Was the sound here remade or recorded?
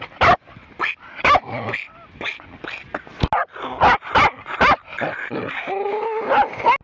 recorded